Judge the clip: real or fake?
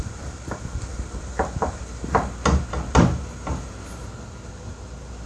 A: real